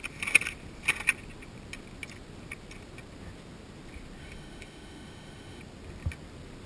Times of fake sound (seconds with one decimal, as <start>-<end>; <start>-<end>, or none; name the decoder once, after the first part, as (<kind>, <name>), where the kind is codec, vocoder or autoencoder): 4.2-5.6 (autoencoder, DAC-VAE)